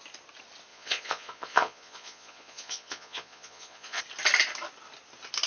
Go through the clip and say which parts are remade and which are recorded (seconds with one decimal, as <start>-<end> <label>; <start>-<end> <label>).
0.0-0.7 recorded; 0.7-4.0 remade; 4.0-5.5 recorded